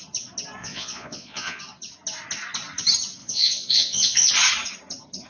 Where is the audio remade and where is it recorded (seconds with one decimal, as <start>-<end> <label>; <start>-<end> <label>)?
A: 0.0-0.6 recorded; 0.6-1.6 remade; 1.6-3.2 recorded; 3.2-4.3 remade; 4.3-5.3 recorded